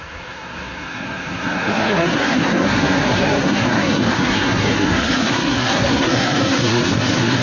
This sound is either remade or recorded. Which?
remade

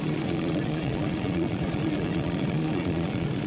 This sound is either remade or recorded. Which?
remade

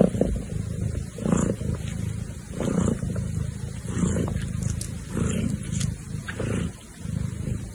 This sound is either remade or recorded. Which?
recorded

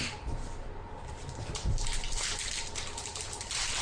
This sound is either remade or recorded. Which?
recorded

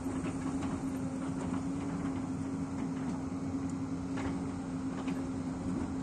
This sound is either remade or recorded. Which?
recorded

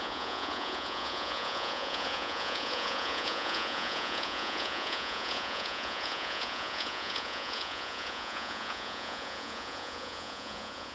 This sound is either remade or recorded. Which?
remade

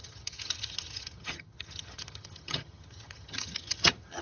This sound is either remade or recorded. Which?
remade